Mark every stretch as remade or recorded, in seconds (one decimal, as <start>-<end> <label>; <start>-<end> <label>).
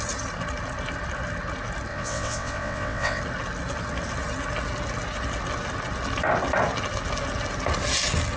0.0-1.9 recorded; 1.9-3.2 remade; 3.2-8.4 recorded